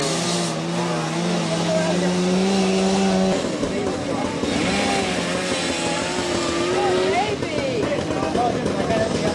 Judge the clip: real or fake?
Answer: real